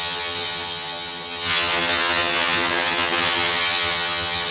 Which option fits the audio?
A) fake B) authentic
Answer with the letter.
A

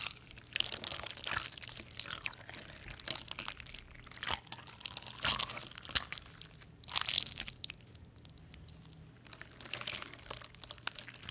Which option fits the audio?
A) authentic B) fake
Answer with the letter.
A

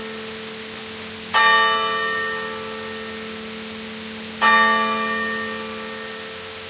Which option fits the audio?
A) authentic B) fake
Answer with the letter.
A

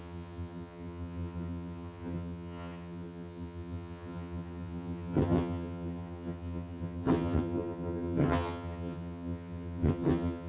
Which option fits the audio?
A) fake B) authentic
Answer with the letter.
A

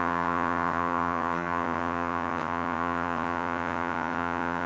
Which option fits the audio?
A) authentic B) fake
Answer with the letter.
B